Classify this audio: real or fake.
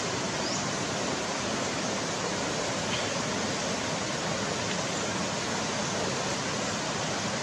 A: real